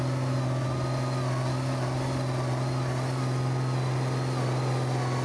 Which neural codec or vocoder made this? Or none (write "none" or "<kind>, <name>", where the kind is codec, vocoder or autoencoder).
none